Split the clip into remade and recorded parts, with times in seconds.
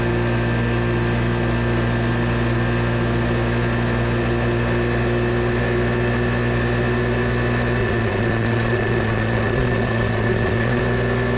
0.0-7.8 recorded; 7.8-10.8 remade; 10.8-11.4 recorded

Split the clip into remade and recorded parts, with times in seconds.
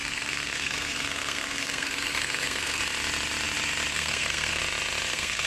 0.0-2.8 remade; 2.8-3.9 recorded; 3.9-4.6 remade; 4.6-5.1 recorded; 5.1-5.5 remade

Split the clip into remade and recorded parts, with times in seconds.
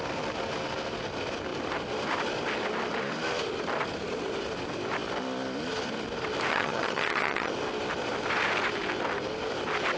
0.0-6.5 recorded; 6.5-7.5 remade; 7.5-10.0 recorded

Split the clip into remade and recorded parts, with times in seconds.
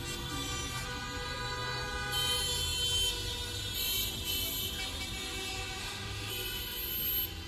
0.0-5.8 recorded; 5.8-6.3 remade; 6.3-7.5 recorded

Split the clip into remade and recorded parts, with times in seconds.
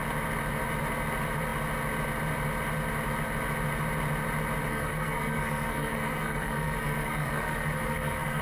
0.0-4.7 recorded; 4.7-8.4 remade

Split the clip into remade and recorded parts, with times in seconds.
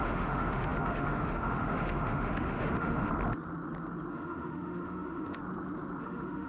0.0-3.1 remade; 3.1-4.1 recorded; 4.1-5.4 remade; 5.4-6.0 recorded; 6.0-6.5 remade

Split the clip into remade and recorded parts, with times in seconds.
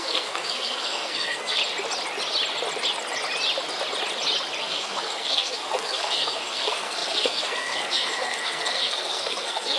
0.0-1.6 remade; 1.6-4.6 recorded; 4.6-9.8 remade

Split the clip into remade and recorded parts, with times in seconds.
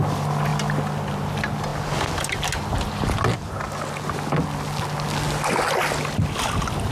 0.0-6.9 recorded